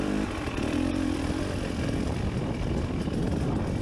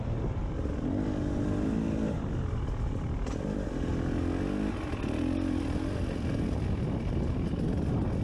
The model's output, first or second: first